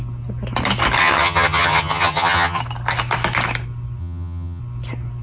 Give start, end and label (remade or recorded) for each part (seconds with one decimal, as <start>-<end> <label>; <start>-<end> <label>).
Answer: 0.0-1.0 recorded; 1.0-2.6 remade; 2.6-4.0 recorded; 4.0-4.6 remade; 4.6-5.2 recorded